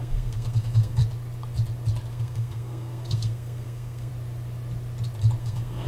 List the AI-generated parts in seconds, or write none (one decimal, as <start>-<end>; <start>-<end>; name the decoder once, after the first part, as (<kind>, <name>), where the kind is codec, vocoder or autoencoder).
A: 0.0-1.0 (codec, SNAC); 2.1-4.1; 5.4-5.9